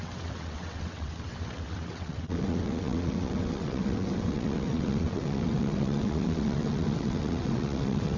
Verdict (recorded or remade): remade